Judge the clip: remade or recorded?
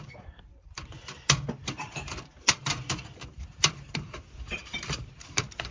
remade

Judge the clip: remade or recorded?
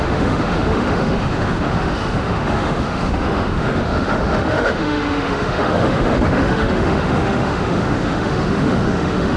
remade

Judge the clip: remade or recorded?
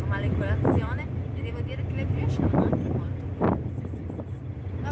recorded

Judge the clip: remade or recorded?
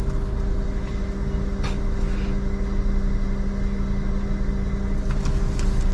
recorded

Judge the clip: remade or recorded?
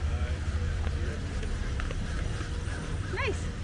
recorded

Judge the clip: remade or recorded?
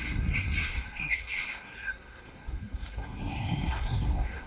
remade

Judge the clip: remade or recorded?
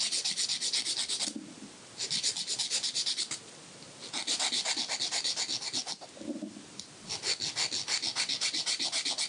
recorded